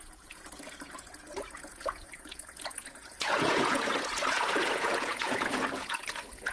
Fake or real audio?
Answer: fake